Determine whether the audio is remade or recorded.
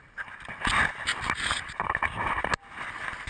recorded